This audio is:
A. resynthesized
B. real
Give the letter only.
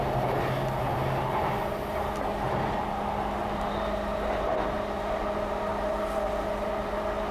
B